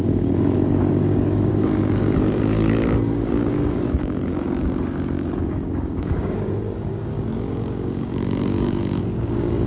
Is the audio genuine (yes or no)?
no